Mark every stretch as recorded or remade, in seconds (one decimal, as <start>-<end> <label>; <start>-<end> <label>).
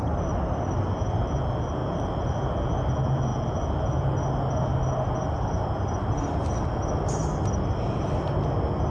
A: 0.0-1.8 recorded; 1.8-2.5 remade; 2.5-8.9 recorded